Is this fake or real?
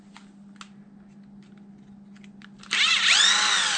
real